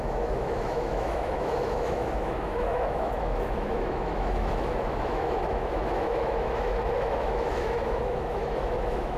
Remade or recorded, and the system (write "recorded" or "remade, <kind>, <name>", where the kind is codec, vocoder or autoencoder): remade, autoencoder, DAC-VAE